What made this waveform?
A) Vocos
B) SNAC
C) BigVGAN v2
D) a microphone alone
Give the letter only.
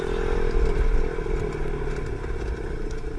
D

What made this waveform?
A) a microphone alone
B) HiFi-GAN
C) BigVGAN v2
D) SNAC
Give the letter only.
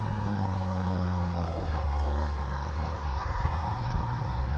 D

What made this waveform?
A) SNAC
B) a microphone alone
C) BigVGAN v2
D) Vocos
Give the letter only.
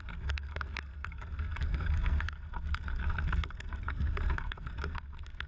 A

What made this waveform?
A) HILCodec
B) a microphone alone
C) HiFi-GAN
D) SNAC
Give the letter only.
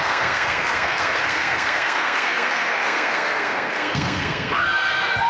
D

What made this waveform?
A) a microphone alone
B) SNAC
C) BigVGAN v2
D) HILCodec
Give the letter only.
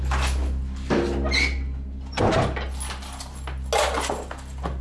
A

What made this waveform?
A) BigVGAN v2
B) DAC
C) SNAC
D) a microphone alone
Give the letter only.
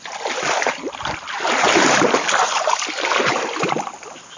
D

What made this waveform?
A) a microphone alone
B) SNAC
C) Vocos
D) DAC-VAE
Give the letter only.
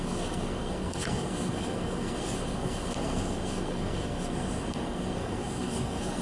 B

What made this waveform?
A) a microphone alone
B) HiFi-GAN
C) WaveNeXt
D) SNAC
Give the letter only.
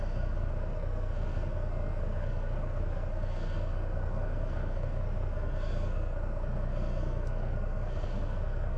D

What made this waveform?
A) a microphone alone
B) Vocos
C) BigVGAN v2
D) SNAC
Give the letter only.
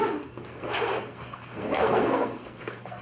D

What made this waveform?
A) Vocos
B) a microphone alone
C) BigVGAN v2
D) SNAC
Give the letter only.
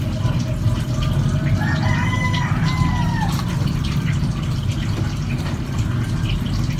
B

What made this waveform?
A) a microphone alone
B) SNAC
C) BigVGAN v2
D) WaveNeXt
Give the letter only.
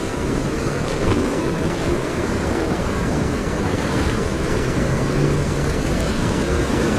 B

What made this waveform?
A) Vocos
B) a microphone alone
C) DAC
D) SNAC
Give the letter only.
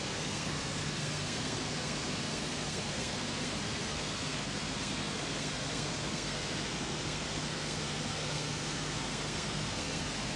D